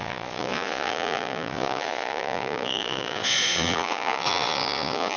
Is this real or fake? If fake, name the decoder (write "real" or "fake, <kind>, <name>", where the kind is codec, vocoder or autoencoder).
fake, vocoder, Vocos